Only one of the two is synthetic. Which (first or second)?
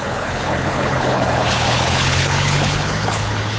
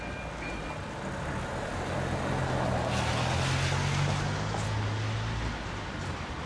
first